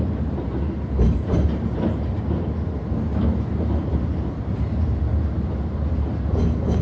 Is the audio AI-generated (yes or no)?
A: no